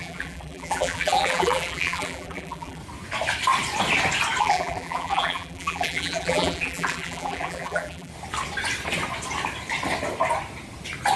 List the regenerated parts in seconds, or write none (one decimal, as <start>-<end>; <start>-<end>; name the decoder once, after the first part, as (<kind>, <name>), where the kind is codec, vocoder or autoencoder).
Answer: 0.0-2.8 (vocoder, BigVGAN v2); 4.4-8.1